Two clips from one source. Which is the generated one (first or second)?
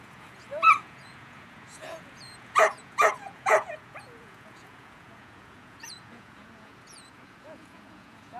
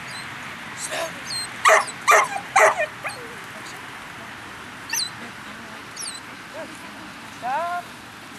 first